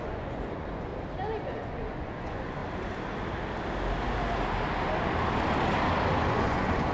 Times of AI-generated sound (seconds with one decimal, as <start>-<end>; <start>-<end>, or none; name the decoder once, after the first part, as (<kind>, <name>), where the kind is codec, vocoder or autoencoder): 0.0-0.9 (vocoder, Vocos); 1.5-2.6; 6.3-6.9